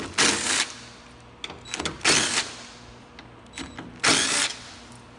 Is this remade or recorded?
recorded